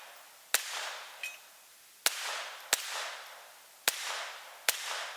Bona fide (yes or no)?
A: yes